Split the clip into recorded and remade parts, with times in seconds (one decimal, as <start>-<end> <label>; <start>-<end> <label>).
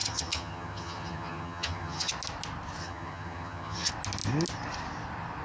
0.0-2.1 remade; 2.1-2.8 recorded; 2.8-3.9 remade; 3.9-5.4 recorded